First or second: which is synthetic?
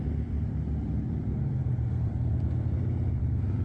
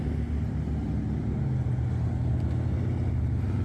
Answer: first